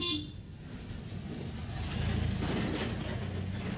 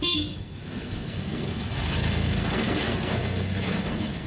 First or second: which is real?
first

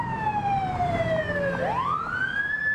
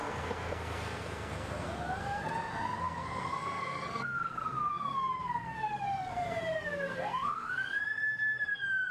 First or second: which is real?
first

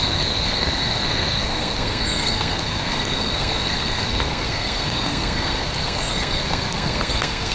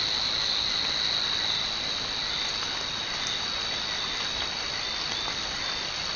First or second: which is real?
second